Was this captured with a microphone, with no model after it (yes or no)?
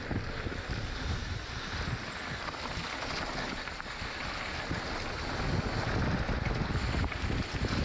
yes